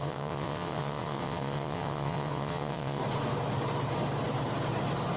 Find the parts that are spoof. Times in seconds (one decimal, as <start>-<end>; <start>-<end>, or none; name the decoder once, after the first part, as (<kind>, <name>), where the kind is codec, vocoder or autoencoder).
0.0-3.0 (vocoder, WaveNeXt)